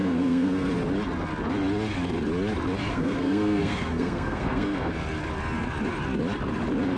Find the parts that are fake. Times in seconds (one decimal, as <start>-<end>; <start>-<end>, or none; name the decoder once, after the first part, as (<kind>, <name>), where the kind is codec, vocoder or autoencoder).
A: 0.0-0.7 (codec, SNAC); 2.9-4.9